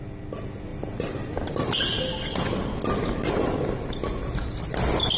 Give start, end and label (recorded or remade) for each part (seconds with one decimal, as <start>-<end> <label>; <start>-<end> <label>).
0.0-5.2 recorded